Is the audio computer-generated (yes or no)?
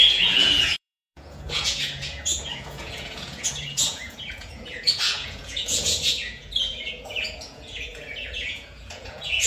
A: yes